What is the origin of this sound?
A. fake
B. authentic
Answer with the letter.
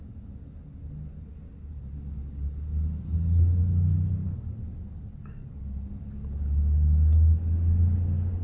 B